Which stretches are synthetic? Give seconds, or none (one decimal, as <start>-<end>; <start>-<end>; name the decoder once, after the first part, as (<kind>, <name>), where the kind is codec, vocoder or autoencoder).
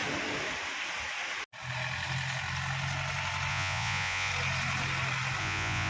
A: 3.5-4.3 (vocoder, Vocos); 5.4-5.9